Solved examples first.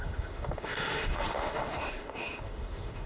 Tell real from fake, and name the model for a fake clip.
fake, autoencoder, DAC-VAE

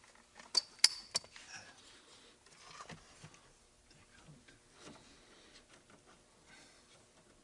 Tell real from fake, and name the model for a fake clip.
real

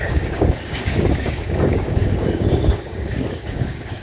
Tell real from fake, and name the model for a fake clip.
fake, codec, DAC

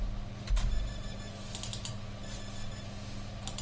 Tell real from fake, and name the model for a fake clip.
real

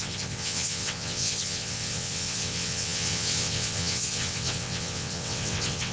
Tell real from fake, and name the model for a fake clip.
fake, vocoder, WaveNeXt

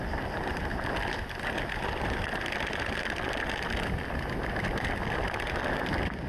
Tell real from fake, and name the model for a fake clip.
real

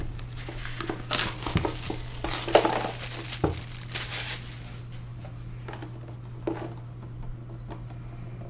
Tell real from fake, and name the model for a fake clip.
real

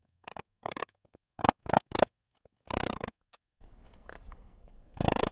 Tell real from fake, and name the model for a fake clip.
fake, codec, SNAC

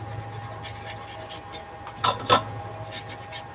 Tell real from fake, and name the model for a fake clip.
real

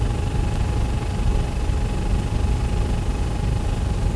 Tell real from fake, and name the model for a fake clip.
real